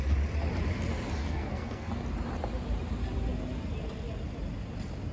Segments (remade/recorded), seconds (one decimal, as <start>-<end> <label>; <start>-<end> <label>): 0.0-1.2 recorded; 1.2-1.9 remade; 1.9-5.1 recorded